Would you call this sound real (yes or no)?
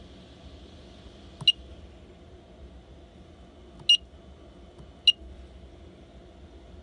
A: yes